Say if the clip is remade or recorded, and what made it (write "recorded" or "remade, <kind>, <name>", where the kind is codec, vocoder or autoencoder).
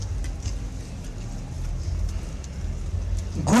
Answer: recorded